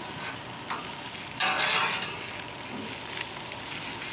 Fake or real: real